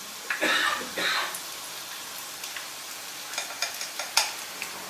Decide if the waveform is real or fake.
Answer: real